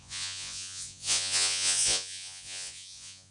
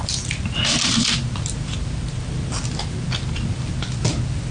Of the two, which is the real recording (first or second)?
second